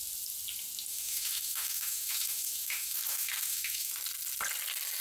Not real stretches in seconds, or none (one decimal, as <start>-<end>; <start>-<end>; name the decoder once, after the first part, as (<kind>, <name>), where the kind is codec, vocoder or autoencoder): 0.9-3.9 (autoencoder, DAC-VAE)